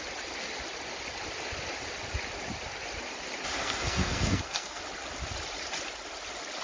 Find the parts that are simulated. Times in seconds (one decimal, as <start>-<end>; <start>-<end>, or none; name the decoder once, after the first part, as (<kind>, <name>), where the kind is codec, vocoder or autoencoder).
3.6-4.8 (codec, SNAC)